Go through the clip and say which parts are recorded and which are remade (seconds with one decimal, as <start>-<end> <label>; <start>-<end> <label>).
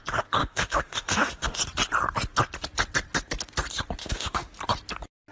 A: 0.0-0.4 recorded; 0.4-1.6 remade; 1.6-4.0 recorded; 4.0-4.6 remade; 4.6-5.3 recorded